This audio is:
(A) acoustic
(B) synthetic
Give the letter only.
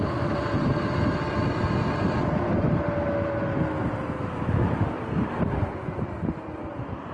A